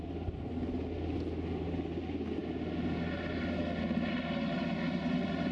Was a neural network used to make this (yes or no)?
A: no